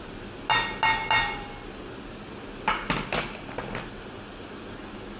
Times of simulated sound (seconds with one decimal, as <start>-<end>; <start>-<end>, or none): none